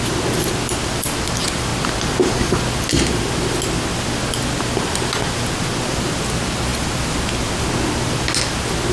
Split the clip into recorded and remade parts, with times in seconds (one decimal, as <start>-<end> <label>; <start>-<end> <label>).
0.0-8.9 recorded